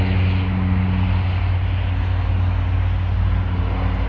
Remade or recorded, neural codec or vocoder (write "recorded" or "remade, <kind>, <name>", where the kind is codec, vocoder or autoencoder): recorded